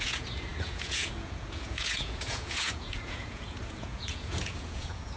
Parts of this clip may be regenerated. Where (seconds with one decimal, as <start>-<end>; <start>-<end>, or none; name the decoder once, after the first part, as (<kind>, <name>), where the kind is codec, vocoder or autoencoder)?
0.0-5.2 (vocoder, Vocos)